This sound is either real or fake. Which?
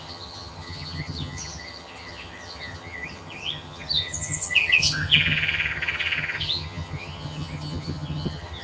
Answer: fake